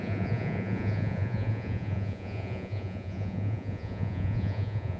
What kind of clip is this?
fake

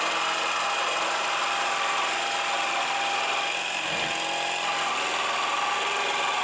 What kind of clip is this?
real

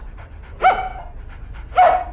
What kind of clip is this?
real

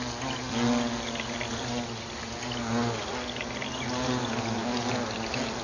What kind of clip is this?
real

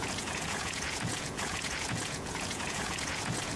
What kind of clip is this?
fake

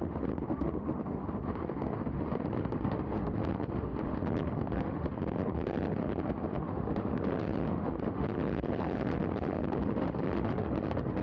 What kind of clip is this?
fake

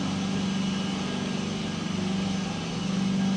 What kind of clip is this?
real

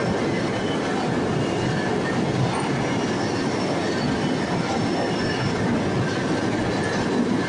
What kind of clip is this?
real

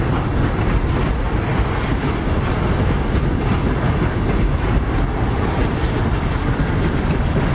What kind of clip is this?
real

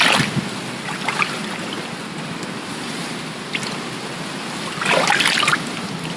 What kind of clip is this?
real